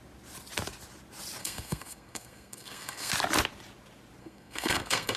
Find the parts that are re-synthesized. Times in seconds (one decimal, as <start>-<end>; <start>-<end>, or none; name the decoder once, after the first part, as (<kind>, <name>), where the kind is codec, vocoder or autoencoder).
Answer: 1.4-3.1 (codec, SNAC); 4.2-5.2